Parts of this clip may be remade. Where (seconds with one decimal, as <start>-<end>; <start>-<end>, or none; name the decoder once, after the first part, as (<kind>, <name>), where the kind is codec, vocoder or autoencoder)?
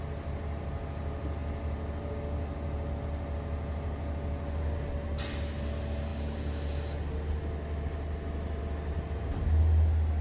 none